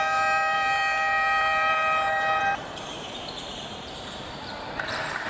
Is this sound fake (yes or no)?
yes